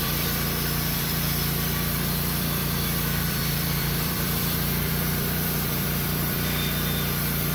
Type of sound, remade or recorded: remade